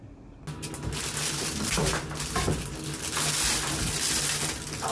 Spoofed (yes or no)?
no